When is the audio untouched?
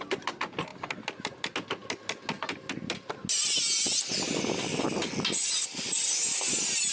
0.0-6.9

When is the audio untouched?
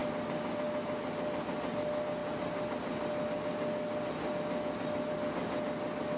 0.0-6.2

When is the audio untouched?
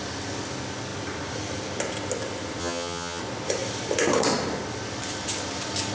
0.0-2.6; 3.2-5.9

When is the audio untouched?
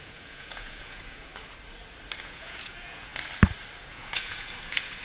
1.3-2.2; 3.1-3.8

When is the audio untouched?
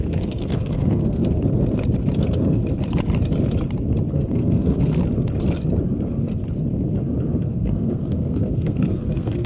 1.4-2.2; 2.6-4.1; 5.0-7.4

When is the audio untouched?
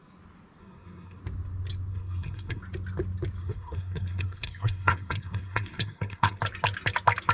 0.0-0.6; 1.2-1.9; 2.6-3.4; 6.4-7.3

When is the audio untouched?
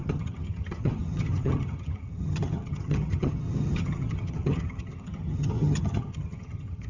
none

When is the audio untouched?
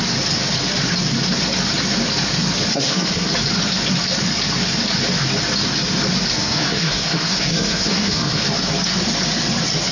0.0-2.7; 3.3-6.3; 8.4-9.9